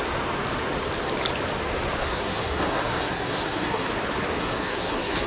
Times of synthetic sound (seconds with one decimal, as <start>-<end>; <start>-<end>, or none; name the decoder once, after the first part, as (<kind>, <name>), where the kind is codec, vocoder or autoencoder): 2.0-3.9 (codec, SNAC); 4.4-5.3